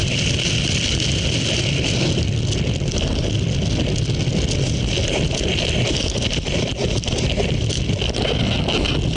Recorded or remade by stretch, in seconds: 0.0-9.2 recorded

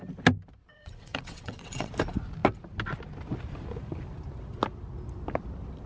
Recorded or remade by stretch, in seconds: 0.0-0.7 recorded; 0.7-1.9 remade; 1.9-5.9 recorded